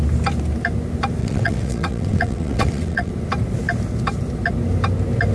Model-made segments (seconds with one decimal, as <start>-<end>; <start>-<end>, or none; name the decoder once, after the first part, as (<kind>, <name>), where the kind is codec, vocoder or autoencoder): 1.2-3.1 (vocoder, WaveNeXt)

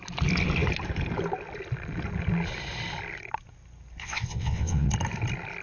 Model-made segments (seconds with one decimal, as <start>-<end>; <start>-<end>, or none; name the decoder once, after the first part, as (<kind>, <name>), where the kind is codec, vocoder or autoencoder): 4.0-4.9 (vocoder, WaveNeXt)

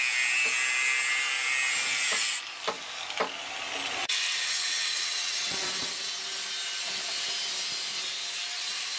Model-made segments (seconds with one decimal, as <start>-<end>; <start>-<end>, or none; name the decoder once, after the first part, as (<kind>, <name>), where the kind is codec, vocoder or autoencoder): 4.0-6.1 (vocoder, WaveNeXt)

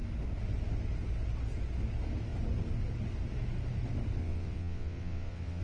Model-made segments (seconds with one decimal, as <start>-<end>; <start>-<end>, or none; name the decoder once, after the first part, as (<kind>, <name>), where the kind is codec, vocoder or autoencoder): 4.2-5.6 (vocoder, WaveNeXt)